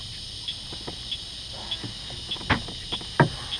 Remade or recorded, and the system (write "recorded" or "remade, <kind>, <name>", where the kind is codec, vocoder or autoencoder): recorded